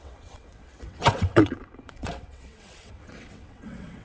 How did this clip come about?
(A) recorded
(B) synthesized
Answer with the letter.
B